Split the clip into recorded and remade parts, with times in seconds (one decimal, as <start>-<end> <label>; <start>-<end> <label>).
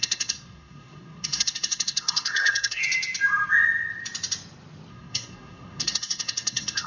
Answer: 0.0-2.8 remade; 2.8-4.9 recorded; 4.9-6.9 remade